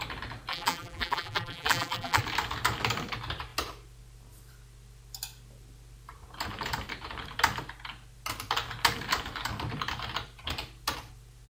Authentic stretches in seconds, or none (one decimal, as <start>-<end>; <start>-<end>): 0.0-0.5; 2.2-11.6